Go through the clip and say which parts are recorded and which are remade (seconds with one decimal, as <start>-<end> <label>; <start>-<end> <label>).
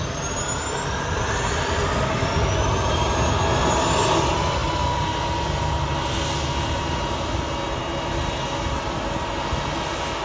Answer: 0.0-10.2 recorded